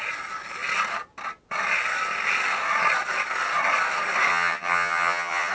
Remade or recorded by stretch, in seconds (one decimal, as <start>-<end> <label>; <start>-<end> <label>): 0.0-4.3 recorded; 4.3-5.5 remade